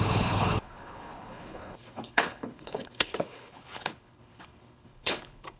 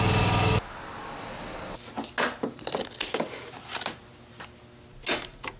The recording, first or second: second